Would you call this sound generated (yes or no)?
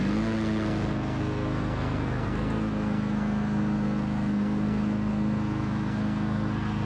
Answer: yes